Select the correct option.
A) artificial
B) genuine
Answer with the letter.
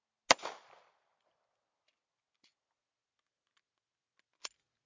B